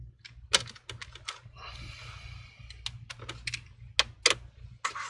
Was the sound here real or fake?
real